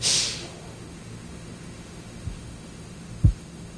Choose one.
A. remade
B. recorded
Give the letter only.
A